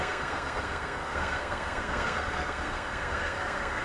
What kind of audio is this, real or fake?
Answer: fake